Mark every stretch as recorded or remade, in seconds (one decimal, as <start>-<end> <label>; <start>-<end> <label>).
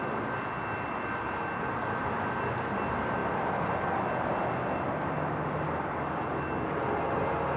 0.0-3.2 recorded; 3.2-3.8 remade; 3.8-7.6 recorded